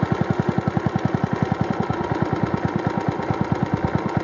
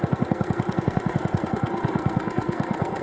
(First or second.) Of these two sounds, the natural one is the first